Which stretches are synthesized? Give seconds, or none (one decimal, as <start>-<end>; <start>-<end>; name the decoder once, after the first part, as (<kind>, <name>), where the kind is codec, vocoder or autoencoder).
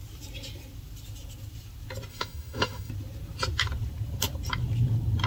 2.1-2.9 (autoencoder, DAC-VAE)